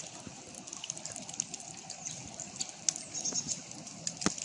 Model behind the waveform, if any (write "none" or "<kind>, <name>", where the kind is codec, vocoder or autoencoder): none